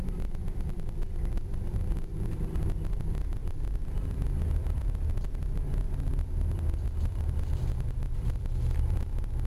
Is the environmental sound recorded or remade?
remade